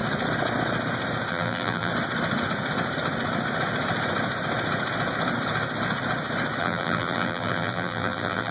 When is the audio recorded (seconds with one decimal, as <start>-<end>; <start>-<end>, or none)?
0.0-1.3; 1.9-6.6